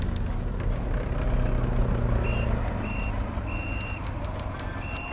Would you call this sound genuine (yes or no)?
yes